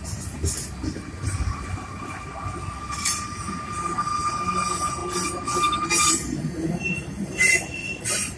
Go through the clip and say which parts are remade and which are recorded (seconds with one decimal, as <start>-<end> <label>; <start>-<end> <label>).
0.0-8.4 recorded